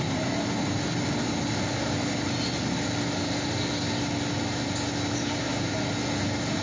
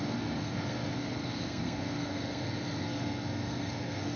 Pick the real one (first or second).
first